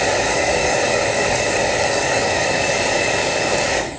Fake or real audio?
fake